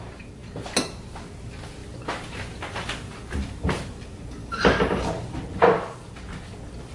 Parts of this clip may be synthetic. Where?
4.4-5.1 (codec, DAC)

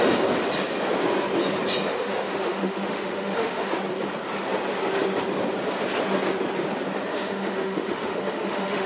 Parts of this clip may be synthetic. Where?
1.9-3.7 (autoencoder, DAC-VAE); 7.1-8.9

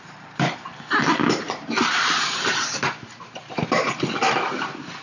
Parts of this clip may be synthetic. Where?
0.0-0.7 (vocoder, BigVGAN v2); 1.3-5.0